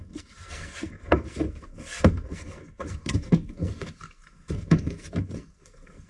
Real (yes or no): no